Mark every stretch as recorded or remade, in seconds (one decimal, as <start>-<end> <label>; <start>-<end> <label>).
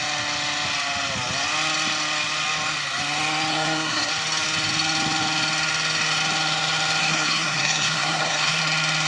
0.0-3.5 recorded; 3.5-4.1 remade; 4.1-7.0 recorded; 7.0-8.6 remade; 8.6-9.1 recorded